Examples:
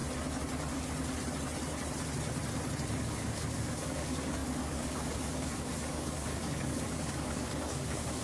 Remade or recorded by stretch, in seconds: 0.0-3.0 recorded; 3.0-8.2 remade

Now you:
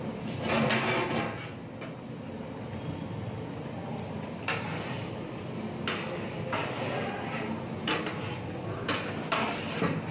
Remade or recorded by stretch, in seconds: 0.0-10.1 recorded

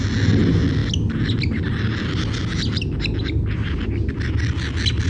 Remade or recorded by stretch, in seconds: 0.0-5.1 recorded